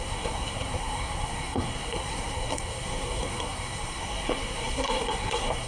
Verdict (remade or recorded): remade